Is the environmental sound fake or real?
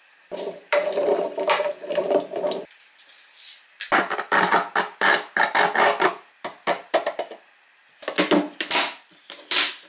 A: fake